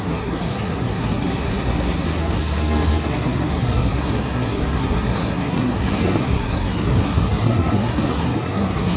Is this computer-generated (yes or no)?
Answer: yes